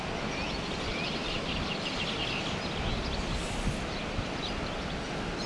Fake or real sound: real